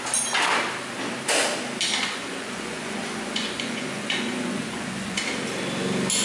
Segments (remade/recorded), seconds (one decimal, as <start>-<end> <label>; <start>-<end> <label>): 0.0-2.0 recorded; 2.0-5.2 remade; 5.2-6.2 recorded